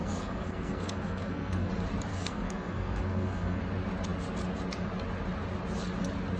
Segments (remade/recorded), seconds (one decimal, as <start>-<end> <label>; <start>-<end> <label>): 0.0-1.7 remade; 1.7-2.1 recorded; 2.1-3.6 remade; 3.6-6.4 recorded